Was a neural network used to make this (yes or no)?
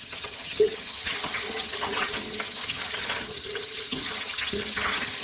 yes